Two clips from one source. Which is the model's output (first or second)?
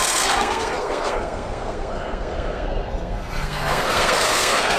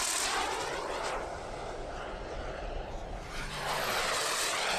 first